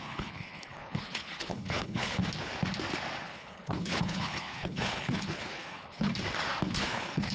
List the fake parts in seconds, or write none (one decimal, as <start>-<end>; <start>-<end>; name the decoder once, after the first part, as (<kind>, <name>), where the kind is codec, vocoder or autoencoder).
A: 0.0-2.2 (codec, HILCodec); 3.2-6.1; 6.7-7.3